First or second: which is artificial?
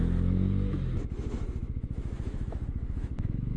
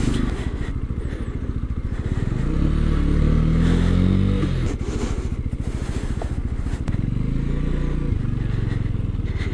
first